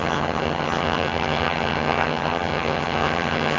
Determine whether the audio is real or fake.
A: fake